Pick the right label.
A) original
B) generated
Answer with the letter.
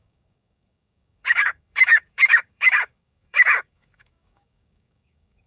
B